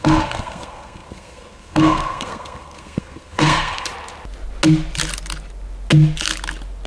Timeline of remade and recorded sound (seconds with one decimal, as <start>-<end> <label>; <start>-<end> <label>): 0.0-3.9 remade; 3.9-6.9 recorded